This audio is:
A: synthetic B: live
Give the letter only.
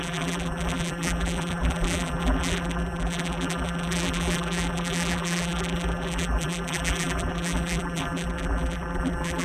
A